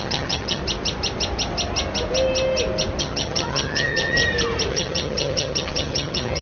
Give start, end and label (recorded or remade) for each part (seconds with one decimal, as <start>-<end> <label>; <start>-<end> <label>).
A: 0.0-0.6 remade; 0.6-3.0 recorded; 3.0-4.2 remade; 4.2-4.7 recorded; 4.7-6.4 remade